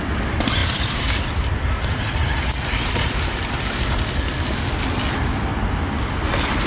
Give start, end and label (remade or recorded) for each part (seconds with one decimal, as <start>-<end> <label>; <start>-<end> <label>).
0.0-5.5 remade; 5.5-6.1 recorded; 6.1-6.7 remade